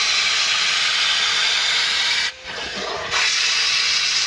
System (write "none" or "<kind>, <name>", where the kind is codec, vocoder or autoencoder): none